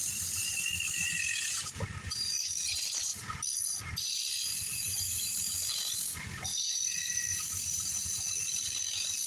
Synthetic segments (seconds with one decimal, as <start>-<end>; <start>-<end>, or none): none